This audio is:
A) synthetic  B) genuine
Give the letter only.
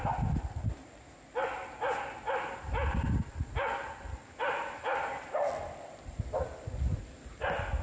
B